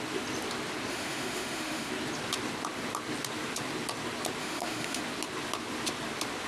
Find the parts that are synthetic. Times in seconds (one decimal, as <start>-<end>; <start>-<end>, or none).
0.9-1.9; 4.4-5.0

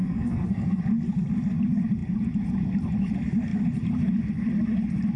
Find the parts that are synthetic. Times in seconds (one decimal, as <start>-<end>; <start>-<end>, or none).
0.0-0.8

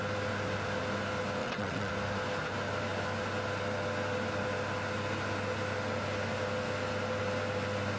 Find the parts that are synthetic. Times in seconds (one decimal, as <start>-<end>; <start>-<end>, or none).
1.4-1.9

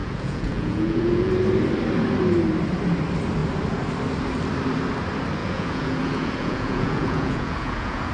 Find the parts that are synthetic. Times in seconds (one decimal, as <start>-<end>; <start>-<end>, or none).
0.0-1.3; 5.4-8.1